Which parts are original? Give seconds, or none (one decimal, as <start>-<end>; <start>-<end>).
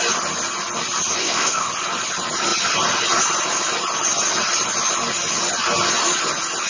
0.0-1.2; 1.7-6.7